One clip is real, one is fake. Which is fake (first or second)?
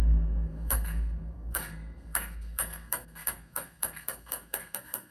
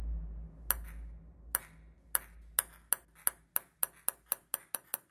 first